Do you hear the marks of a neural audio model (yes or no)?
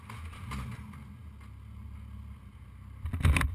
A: no